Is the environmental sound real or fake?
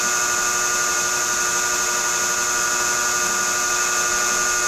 real